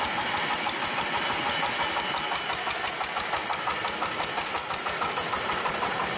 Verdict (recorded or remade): recorded